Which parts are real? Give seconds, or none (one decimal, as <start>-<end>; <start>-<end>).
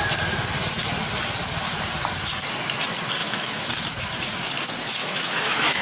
0.0-3.2; 3.7-5.0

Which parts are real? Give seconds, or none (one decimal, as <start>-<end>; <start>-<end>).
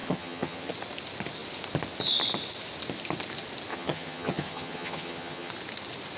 0.7-3.7; 5.5-6.2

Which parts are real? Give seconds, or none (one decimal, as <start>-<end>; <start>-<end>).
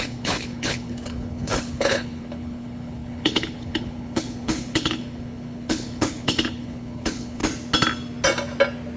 7.4-9.0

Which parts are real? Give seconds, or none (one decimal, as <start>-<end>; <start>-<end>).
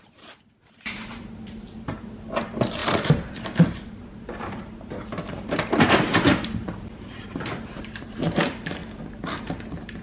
8.8-9.4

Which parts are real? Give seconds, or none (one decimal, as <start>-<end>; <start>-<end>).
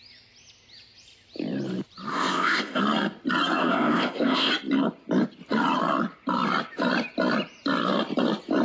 0.0-2.1; 2.8-3.6; 4.5-8.6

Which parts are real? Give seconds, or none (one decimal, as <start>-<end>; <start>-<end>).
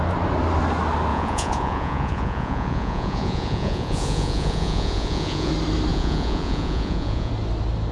0.0-1.1; 5.5-5.9; 7.3-7.9